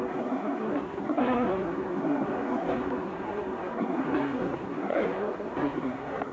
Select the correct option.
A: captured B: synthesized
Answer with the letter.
B